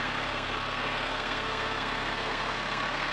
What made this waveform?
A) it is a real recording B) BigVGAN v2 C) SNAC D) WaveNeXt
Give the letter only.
C